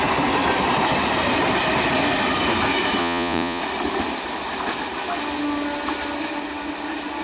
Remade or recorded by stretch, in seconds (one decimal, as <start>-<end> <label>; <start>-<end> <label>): 0.0-3.0 recorded; 3.0-3.6 remade; 3.6-7.2 recorded